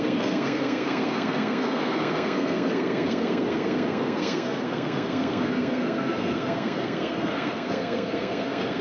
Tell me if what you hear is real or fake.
fake